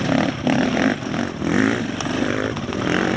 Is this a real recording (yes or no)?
yes